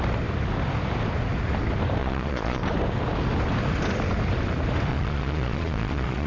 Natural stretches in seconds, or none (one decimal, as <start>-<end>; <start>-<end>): 0.0-2.0; 2.6-4.9